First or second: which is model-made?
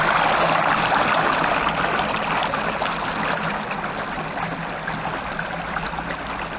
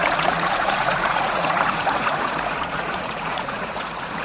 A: second